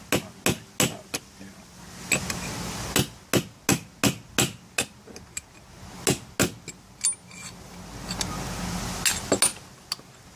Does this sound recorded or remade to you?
recorded